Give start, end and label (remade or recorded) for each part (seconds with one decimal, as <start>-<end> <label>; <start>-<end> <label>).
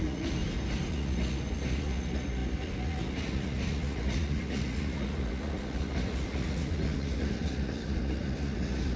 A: 0.0-0.4 remade; 0.4-0.9 recorded; 0.9-9.0 remade